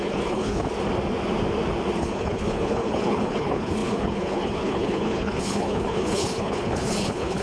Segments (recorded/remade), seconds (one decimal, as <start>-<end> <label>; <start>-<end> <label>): 0.0-0.7 remade; 0.7-2.0 recorded; 2.0-7.4 remade